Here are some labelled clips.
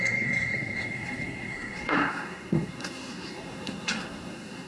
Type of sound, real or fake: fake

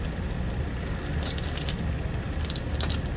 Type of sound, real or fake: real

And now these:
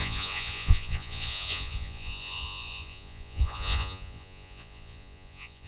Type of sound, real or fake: fake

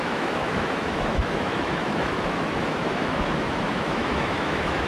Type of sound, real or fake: fake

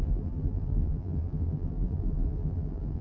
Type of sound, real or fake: fake